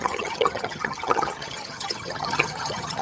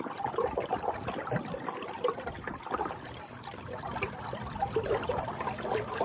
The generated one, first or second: first